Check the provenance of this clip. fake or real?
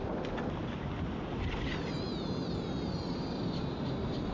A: real